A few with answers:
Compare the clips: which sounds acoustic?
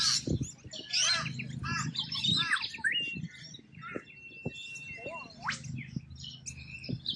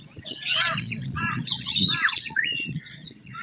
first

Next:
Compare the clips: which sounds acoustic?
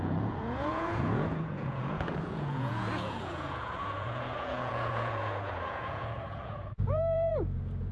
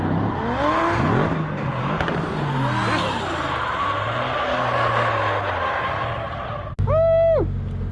second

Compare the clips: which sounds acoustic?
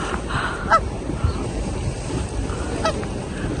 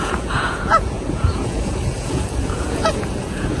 first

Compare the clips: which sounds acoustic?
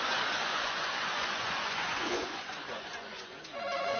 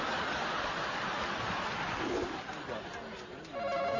second